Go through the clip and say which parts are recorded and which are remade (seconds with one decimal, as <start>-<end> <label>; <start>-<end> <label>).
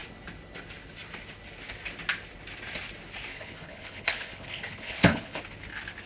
0.0-3.3 recorded; 3.3-5.4 remade; 5.4-6.1 recorded